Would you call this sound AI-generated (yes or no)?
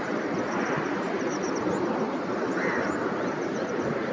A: no